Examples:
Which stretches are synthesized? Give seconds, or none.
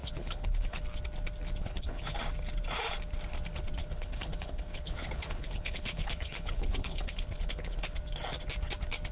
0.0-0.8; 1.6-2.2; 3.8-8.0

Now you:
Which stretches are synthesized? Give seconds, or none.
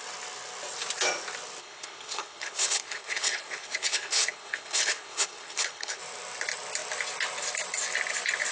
1.6-6.0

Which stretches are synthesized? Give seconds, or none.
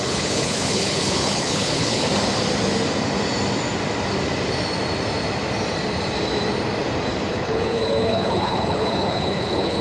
0.0-2.1; 7.3-9.8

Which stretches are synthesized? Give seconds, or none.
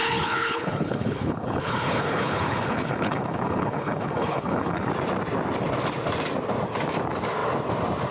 0.0-4.9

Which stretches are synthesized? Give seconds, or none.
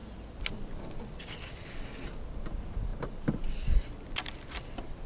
none